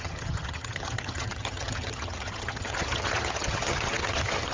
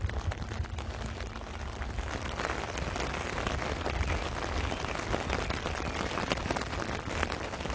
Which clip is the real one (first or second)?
second